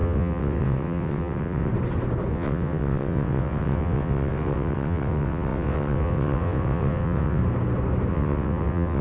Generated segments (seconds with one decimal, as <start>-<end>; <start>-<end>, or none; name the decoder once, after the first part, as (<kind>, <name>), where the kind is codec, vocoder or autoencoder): 0.0-1.7 (vocoder, WaveNeXt); 2.3-7.4; 8.1-9.0